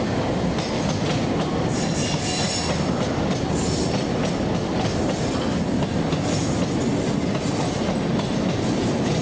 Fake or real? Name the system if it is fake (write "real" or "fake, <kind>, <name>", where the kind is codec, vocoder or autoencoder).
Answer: real